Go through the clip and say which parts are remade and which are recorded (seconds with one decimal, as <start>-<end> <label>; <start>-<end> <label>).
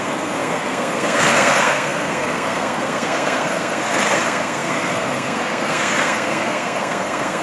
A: 0.0-7.4 remade